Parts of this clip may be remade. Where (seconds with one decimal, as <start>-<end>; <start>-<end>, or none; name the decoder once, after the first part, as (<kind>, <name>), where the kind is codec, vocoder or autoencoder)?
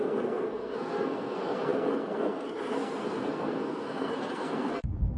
0.0-5.2 (codec, SNAC)